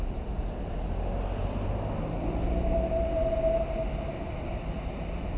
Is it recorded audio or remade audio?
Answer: recorded